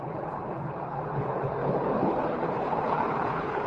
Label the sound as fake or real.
fake